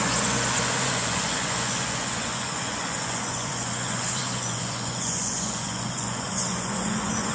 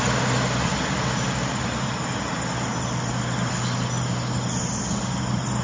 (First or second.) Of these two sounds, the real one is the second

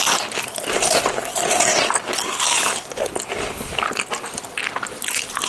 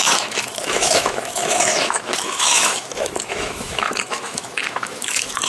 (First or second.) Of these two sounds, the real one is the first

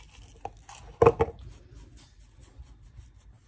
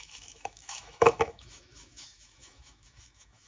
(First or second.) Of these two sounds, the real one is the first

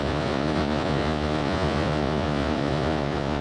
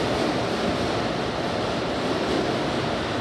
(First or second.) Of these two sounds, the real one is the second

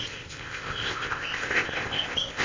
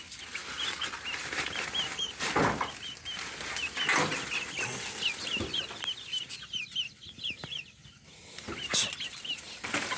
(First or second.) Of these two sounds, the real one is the second